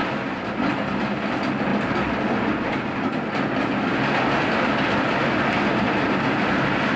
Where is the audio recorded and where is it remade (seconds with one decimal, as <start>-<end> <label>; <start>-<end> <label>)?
0.0-1.2 remade; 1.2-7.0 recorded